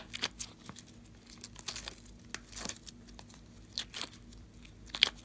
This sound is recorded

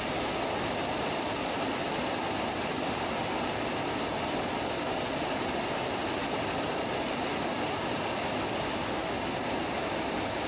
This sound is recorded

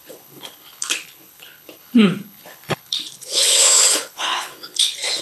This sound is remade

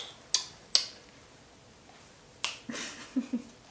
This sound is recorded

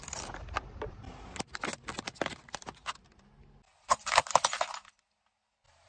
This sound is recorded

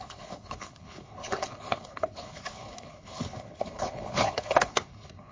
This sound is remade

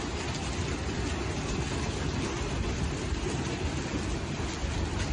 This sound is recorded